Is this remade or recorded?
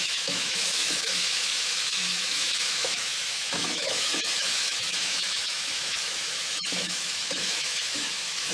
remade